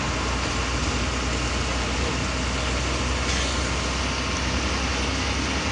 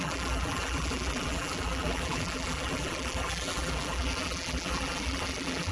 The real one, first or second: first